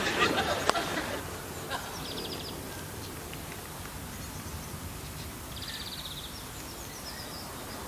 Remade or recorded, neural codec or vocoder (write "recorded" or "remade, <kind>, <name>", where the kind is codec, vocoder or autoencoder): remade, vocoder, BigVGAN v2